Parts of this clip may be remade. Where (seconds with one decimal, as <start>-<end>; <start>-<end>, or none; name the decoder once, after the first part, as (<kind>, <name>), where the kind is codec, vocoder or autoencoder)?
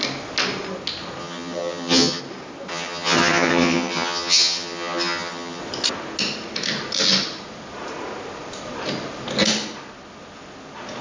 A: 1.2-2.2 (vocoder, HiFi-GAN); 2.7-5.6